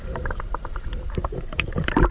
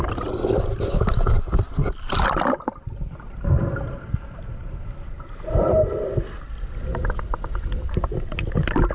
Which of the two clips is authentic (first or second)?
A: second